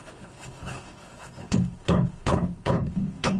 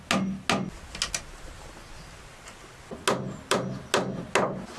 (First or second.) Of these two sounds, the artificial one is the first